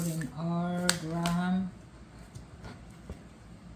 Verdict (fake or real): real